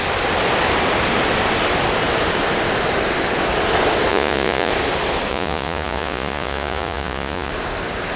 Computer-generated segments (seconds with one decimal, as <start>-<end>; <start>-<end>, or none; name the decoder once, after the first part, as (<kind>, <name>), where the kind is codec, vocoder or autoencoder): 4.1-4.7 (vocoder, Vocos); 5.3-7.5